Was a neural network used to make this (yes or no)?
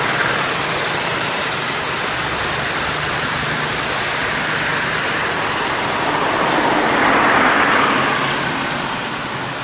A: no